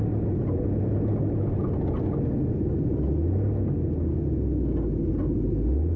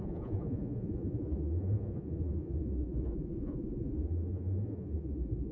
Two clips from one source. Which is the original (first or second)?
first